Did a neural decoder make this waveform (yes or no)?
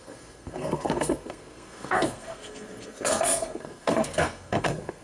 yes